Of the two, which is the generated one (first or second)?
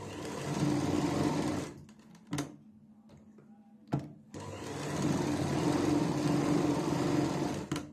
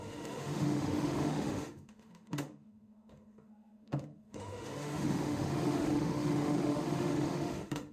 second